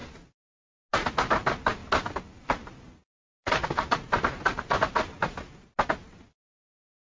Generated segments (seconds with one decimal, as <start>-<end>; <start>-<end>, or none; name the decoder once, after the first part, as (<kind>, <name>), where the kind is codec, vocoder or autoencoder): none